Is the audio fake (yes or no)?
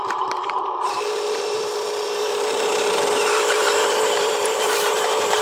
yes